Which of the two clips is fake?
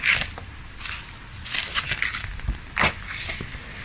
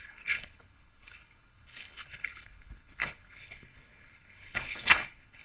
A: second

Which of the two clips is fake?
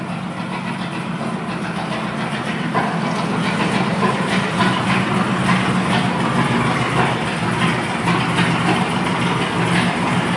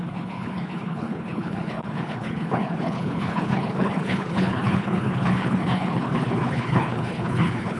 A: second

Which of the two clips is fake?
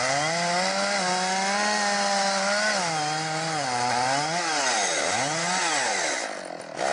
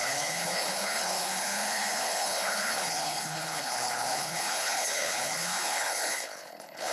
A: second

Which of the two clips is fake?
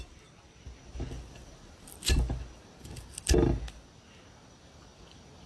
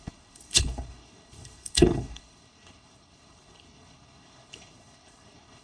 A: second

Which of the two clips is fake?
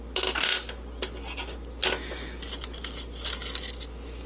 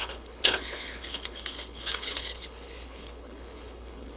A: second